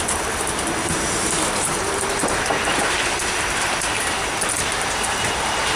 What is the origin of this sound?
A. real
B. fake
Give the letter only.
B